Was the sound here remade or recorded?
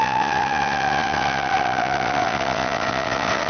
remade